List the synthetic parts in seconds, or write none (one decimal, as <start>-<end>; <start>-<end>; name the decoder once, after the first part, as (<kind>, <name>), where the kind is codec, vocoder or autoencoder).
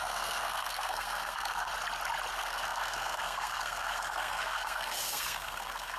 0.0-1.7 (codec, SNAC); 2.3-6.0